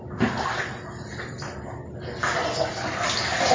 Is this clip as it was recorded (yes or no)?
yes